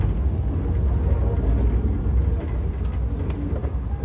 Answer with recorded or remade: recorded